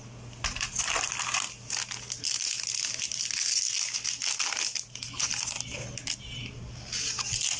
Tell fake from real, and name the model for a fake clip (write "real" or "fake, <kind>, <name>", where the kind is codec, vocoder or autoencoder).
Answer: real